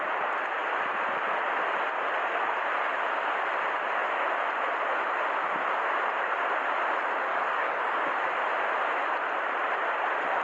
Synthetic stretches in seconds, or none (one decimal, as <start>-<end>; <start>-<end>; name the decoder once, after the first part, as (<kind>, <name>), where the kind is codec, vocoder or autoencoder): 7.3-8.0 (codec, DAC)